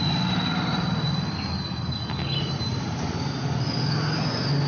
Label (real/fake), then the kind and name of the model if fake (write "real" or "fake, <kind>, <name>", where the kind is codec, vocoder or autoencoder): real